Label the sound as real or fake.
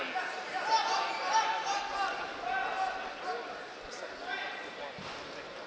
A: real